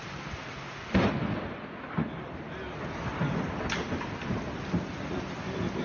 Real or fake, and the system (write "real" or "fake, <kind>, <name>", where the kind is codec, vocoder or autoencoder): real